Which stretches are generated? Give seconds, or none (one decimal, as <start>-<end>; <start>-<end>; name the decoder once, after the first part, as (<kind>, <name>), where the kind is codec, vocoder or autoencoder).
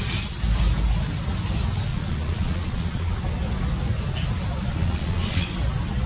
1.9-3.1 (vocoder, Vocos); 4.7-5.5